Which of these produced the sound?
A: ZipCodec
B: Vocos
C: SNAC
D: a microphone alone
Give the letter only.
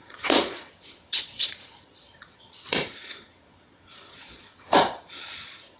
B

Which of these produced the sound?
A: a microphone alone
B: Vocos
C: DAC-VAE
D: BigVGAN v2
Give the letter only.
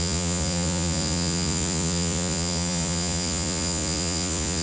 B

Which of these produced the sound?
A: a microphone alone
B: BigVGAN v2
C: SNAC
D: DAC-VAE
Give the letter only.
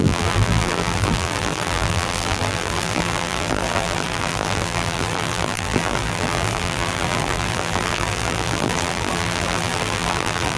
B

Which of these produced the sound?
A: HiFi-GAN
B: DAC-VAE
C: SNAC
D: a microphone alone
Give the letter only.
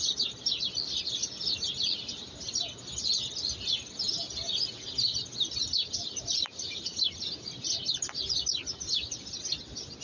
D